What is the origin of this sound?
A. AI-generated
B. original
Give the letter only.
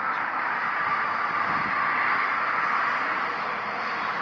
B